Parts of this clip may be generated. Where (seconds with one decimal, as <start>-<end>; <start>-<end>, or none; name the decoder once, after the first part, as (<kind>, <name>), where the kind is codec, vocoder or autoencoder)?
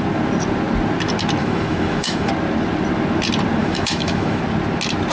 1.4-2.3 (autoencoder, DAC-VAE); 3.6-4.4